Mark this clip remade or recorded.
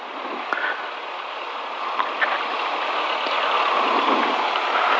recorded